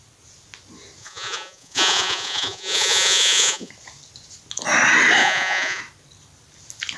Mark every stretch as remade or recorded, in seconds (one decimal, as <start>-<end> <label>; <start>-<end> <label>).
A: 0.0-1.0 recorded; 1.0-3.7 remade; 3.7-5.2 recorded; 5.2-5.8 remade; 5.8-7.0 recorded